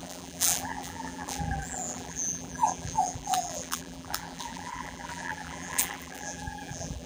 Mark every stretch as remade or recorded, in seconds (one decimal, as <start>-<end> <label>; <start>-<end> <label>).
0.0-7.1 remade